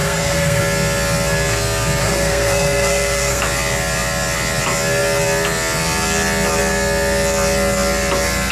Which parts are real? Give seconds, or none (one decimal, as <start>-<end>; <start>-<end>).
0.6-2.0; 3.4-8.5